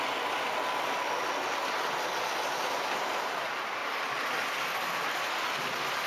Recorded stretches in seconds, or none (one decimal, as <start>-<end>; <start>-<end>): 0.0-6.1

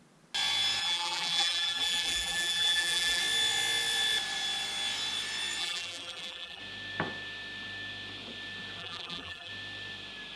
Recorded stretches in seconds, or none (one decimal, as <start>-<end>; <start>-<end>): 0.0-0.8; 3.2-5.6; 6.6-8.8; 9.5-10.4

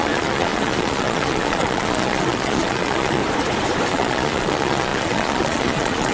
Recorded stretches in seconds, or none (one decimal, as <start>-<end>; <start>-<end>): 3.2-3.9

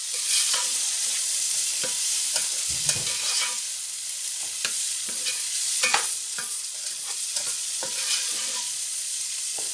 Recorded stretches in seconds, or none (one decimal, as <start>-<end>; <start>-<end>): 1.0-4.7

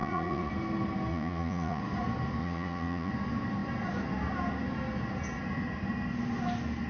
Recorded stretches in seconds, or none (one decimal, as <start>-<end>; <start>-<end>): 0.5-1.1; 1.8-2.4; 3.1-6.9